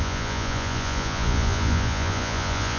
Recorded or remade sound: remade